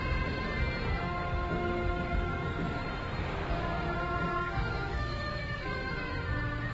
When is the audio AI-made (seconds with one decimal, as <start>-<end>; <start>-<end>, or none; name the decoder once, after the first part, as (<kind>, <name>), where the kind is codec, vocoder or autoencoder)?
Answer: 4.3-6.1 (codec, DAC)